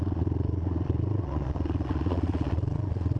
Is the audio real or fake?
fake